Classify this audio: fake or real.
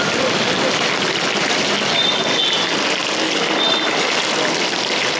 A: real